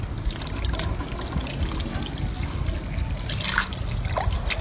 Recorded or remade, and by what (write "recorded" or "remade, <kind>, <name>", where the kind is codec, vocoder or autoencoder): recorded